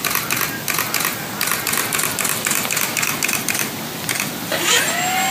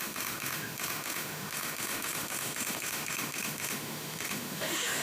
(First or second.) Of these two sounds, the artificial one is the second